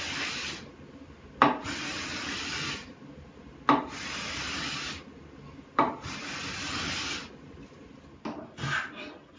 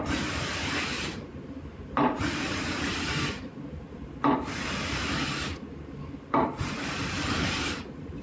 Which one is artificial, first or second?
second